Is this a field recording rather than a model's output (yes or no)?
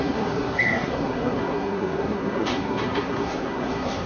no